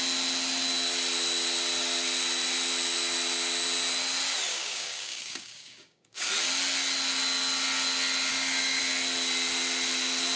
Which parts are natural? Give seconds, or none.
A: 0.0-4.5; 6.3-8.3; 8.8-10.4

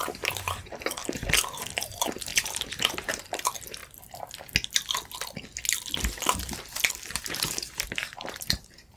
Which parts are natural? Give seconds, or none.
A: 3.8-6.9

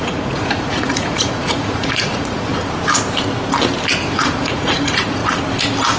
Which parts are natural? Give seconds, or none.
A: 2.5-4.0; 5.2-6.0